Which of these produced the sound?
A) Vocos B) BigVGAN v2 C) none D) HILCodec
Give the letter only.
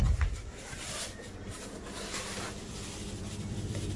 B